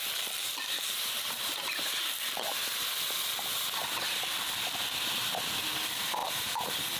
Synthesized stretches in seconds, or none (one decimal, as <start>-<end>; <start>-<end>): 0.4-1.6; 6.2-7.0